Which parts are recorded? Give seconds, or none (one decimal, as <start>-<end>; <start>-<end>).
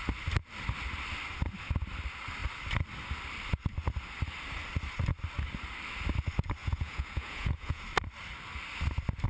0.0-6.6; 7.8-9.3